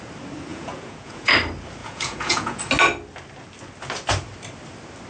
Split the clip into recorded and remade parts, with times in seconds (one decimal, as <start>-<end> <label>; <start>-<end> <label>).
0.0-0.5 recorded; 0.5-1.3 remade; 1.3-1.8 recorded; 1.8-2.6 remade; 2.6-5.1 recorded